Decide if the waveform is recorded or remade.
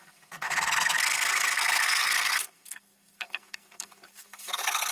remade